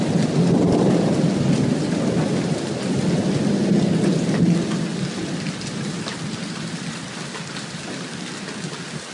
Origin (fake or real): real